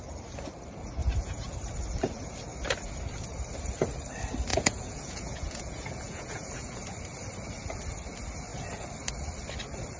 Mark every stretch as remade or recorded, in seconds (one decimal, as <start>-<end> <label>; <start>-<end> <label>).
0.0-1.0 recorded; 1.0-1.5 remade; 1.5-4.5 recorded; 4.5-6.8 remade; 6.8-10.0 recorded